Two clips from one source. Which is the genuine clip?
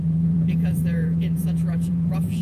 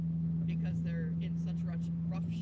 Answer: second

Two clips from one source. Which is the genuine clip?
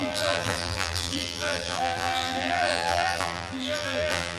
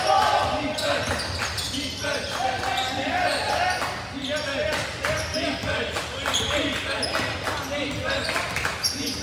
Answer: second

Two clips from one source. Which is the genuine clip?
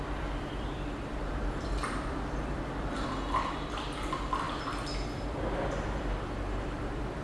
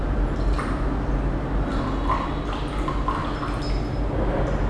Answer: second